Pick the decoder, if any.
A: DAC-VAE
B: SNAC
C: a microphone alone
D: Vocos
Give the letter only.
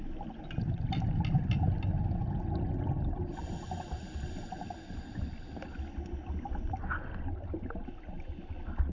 C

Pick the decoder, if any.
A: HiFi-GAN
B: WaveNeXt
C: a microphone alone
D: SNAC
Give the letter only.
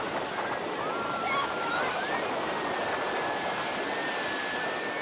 C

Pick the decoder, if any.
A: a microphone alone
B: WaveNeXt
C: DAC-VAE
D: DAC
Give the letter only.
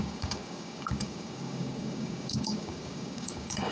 D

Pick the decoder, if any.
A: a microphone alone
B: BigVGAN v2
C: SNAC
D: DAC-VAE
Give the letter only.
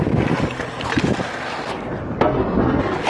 A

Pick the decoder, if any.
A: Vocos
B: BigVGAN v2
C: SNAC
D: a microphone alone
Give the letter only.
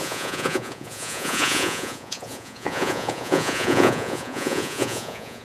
A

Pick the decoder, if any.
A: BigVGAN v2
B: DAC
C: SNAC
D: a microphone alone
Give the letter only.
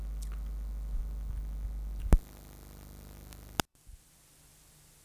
D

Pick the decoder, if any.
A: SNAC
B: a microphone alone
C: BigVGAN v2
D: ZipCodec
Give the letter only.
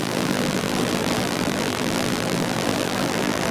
C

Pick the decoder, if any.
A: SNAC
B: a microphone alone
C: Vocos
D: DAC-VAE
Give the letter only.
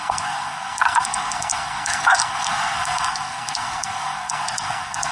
A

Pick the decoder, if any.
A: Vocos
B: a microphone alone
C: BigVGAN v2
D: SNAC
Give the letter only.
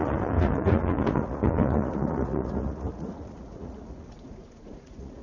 A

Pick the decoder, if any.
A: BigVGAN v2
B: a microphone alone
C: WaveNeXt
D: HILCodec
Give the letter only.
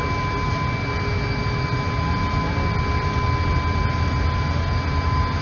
B